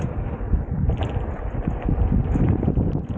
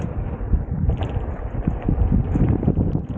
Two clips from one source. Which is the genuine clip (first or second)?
first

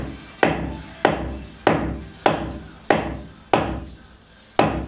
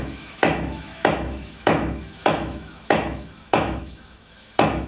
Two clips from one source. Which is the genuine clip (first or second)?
first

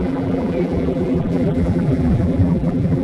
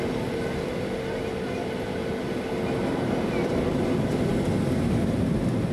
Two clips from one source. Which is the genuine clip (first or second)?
second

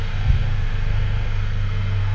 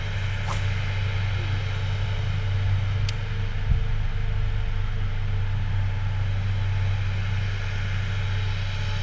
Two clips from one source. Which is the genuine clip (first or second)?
second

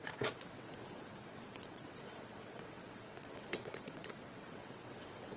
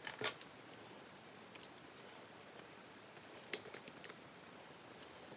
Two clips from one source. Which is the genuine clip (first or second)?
second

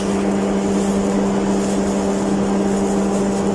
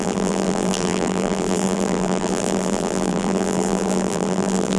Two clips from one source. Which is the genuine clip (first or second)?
first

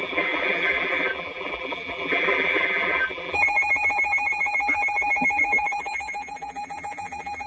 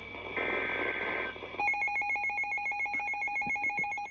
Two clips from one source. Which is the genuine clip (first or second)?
second